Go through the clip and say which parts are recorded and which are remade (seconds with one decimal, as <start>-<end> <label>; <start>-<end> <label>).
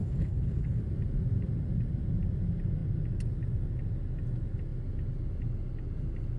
0.0-0.8 remade; 0.8-6.4 recorded